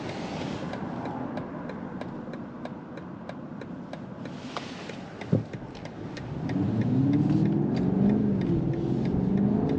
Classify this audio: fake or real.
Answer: real